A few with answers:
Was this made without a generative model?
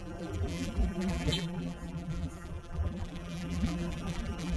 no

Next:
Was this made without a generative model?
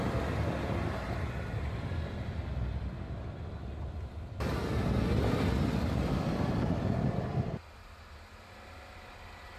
yes